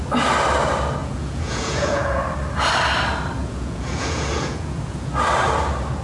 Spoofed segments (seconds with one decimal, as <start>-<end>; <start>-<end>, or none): 1.0-2.2; 3.4-5.1